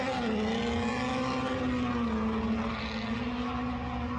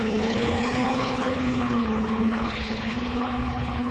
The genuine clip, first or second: first